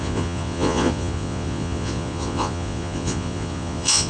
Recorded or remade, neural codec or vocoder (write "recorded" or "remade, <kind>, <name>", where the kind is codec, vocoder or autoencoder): remade, vocoder, Vocos